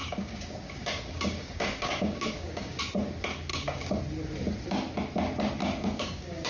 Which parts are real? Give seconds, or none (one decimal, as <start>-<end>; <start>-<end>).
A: 2.8-3.5; 4.0-5.6